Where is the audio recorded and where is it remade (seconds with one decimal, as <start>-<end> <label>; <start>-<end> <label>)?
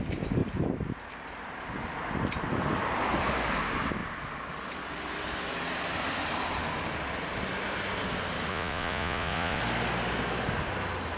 0.0-8.5 recorded; 8.5-9.6 remade; 9.6-11.2 recorded